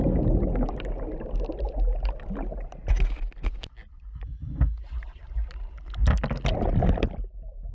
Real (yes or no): yes